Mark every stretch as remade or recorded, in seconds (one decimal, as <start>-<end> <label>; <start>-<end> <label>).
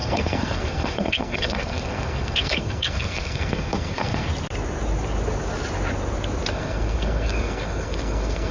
0.0-4.3 remade; 4.3-6.5 recorded; 6.5-8.5 remade